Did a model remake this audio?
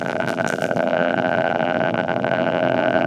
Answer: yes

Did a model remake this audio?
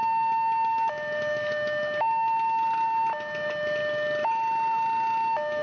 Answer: no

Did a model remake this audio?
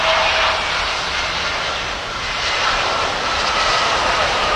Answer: yes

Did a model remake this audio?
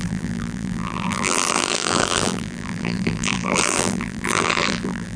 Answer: yes